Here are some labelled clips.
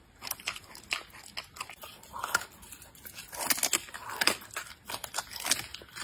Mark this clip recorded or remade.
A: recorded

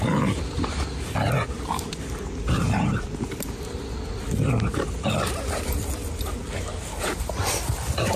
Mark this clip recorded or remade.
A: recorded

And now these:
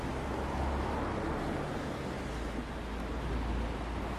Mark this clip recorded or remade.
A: recorded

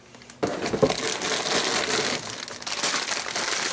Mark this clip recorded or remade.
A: recorded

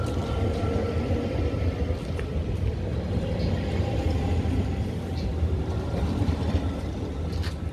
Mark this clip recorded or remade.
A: recorded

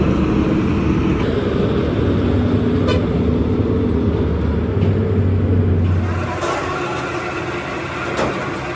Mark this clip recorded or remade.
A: recorded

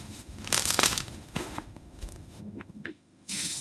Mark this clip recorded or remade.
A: remade